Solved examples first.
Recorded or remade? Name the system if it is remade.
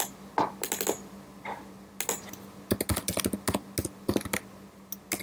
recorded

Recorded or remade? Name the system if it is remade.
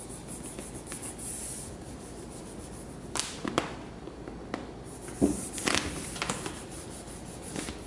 recorded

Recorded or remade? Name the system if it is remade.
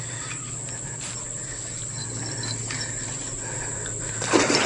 recorded